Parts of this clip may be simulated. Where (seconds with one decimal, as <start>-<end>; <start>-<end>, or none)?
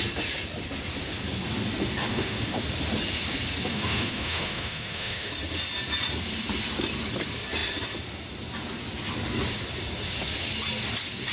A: 2.1-2.6; 3.7-5.3